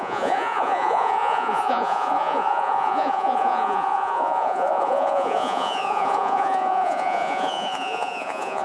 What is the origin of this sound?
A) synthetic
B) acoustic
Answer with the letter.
A